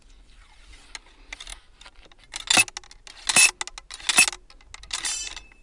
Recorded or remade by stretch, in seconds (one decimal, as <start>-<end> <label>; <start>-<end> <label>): 0.0-5.6 recorded